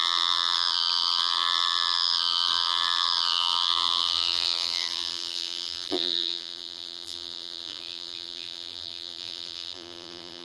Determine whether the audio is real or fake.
fake